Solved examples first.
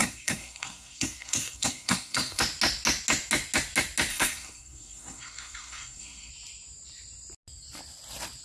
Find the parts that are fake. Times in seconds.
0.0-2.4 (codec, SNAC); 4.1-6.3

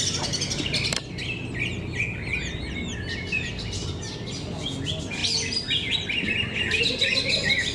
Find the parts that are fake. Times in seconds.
none

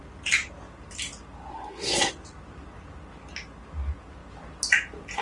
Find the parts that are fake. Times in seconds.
1.5-2.1 (codec, SNAC)

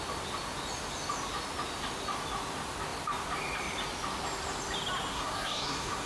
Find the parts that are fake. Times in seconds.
5.1-6.1 (codec, SNAC)